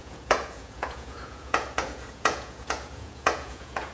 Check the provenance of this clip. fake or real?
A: fake